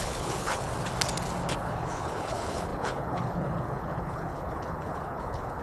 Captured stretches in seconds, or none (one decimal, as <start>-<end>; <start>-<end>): 0.7-1.6